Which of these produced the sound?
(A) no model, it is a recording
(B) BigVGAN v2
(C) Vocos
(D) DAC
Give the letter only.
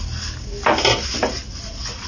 A